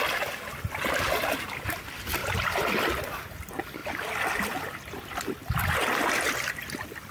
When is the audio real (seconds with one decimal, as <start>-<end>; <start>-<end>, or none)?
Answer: 0.0-0.5; 1.2-2.2; 3.3-3.8; 5.4-7.1